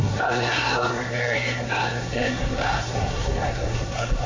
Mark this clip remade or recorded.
remade